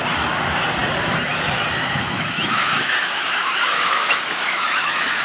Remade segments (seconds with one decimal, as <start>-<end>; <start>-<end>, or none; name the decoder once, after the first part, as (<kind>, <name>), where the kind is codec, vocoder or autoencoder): 2.0-5.2 (autoencoder, DAC-VAE)